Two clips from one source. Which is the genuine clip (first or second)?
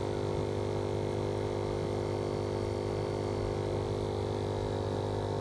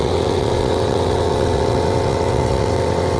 first